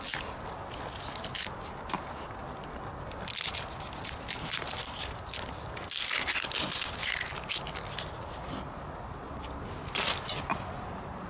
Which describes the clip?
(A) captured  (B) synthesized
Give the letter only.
A